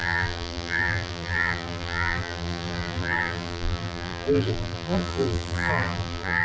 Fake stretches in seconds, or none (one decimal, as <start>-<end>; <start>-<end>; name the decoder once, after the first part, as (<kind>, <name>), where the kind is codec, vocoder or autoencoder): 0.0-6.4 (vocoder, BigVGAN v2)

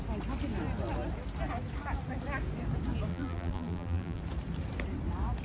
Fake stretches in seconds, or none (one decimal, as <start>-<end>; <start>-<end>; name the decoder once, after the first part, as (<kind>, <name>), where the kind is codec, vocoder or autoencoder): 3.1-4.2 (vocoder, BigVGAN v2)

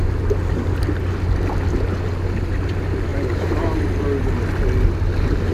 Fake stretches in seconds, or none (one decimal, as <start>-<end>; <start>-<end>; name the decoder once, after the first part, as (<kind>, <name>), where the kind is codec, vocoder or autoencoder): 3.1-3.8 (vocoder, BigVGAN v2)

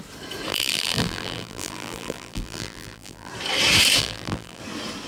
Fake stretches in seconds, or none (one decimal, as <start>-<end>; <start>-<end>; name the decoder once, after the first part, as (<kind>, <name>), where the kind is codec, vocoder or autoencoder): 0.5-3.3 (vocoder, BigVGAN v2); 4.0-4.6